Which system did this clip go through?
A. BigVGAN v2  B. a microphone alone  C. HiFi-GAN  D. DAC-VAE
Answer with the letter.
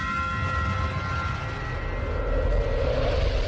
B